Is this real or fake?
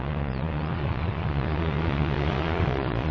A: fake